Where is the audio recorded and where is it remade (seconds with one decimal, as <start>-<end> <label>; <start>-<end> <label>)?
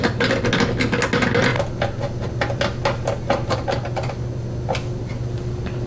0.0-5.9 recorded